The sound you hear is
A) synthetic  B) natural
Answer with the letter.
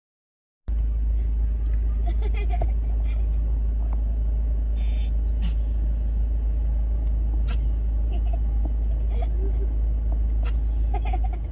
B